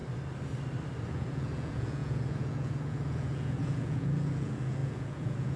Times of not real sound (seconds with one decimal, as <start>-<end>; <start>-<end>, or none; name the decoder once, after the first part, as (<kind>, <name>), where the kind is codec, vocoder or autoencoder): 1.1-5.6 (vocoder, Vocos)